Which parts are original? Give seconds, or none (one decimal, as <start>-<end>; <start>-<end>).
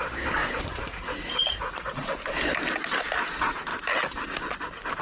0.0-0.4; 2.2-5.0